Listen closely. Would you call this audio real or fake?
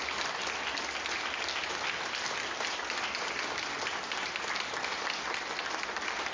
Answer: real